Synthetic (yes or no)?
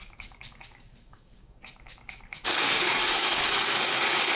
yes